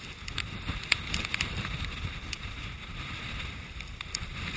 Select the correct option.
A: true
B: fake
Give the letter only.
A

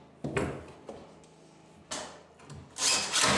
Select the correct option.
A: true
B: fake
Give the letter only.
A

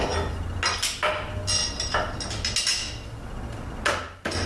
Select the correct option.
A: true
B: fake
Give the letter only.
A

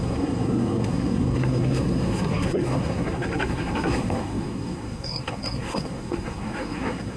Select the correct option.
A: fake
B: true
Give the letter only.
A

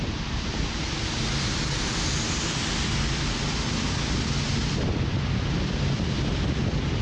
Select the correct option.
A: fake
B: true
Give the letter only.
B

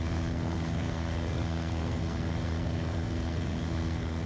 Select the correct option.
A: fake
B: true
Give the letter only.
A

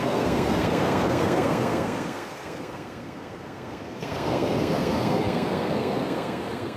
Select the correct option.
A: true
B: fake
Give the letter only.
B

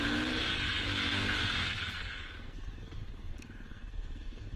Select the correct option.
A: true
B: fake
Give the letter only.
B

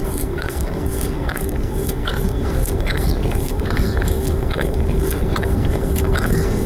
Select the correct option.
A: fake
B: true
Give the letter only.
A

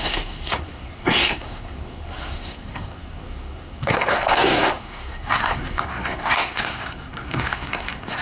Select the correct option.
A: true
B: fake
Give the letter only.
B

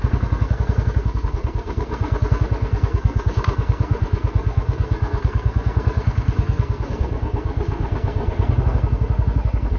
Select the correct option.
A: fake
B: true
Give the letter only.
A